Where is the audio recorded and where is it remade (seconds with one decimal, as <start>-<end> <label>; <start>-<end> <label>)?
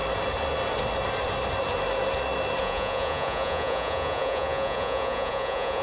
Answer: 0.0-2.6 recorded; 2.6-5.8 remade